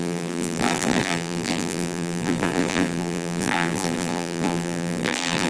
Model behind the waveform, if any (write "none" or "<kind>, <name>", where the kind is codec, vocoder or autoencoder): vocoder, BigVGAN v2